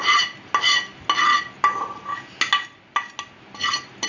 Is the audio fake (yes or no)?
no